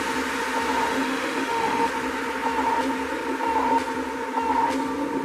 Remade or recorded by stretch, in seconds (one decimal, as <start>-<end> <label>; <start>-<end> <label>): 0.0-0.9 recorded; 0.9-1.9 remade; 1.9-5.2 recorded